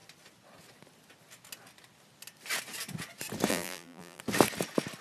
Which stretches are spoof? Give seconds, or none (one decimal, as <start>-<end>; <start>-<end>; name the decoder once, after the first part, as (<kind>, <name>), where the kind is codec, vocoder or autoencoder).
3.5-4.2 (vocoder, BigVGAN v2)